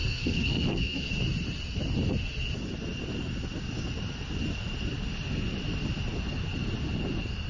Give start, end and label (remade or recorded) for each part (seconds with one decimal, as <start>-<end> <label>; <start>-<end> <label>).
0.0-1.1 remade; 1.1-7.5 recorded